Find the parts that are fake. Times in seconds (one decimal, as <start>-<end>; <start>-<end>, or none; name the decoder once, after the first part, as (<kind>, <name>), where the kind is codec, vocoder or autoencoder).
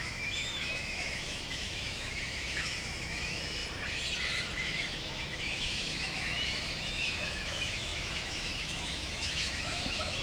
0.0-3.6 (autoencoder, DAC-VAE); 4.6-10.2